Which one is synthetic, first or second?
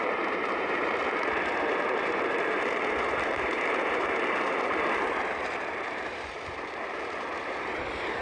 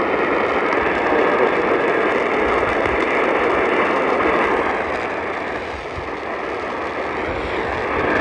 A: first